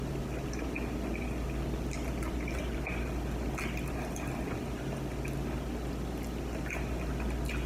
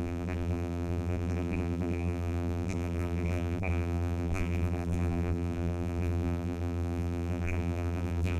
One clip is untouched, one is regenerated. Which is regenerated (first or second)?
second